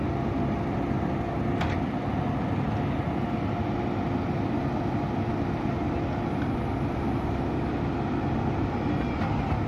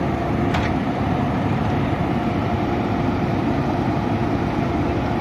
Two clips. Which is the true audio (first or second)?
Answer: first